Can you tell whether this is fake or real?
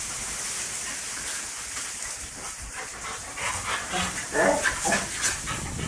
real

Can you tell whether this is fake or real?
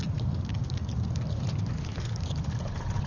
real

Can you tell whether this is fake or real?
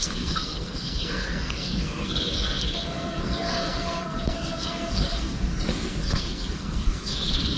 fake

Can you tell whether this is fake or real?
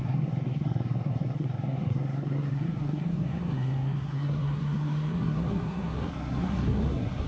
fake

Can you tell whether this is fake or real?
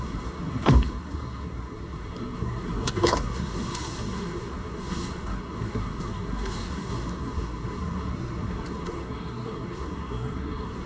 fake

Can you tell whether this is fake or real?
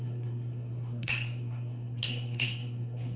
fake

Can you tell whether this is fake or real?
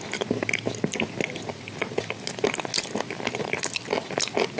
real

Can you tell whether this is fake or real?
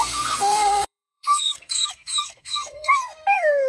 fake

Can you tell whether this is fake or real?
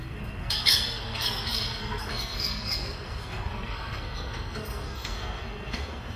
fake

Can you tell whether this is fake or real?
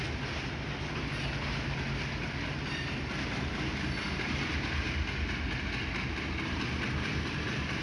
real